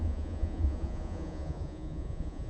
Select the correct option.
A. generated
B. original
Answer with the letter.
A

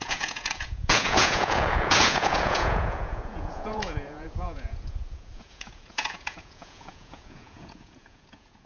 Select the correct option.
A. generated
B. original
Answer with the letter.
A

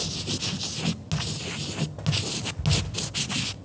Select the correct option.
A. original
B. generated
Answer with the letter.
A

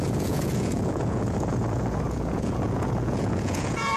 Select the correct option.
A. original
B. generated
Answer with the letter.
B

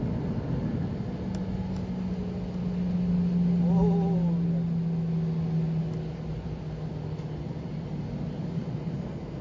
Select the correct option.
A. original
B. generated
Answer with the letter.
A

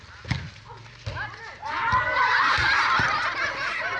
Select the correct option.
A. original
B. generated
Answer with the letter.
A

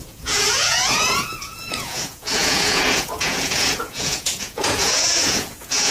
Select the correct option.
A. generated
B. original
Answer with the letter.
A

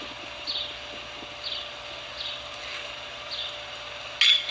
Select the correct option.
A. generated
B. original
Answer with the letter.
B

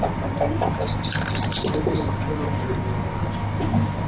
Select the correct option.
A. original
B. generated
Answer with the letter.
A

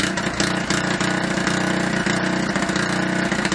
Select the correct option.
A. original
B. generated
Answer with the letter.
A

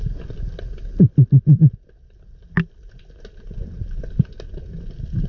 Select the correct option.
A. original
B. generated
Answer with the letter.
A